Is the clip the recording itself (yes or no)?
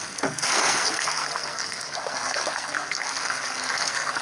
no